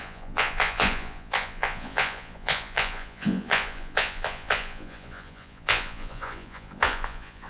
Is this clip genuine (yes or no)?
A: no